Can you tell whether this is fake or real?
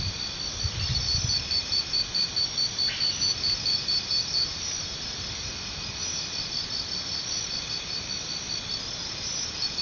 real